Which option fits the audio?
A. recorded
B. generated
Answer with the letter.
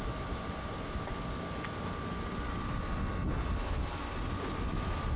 A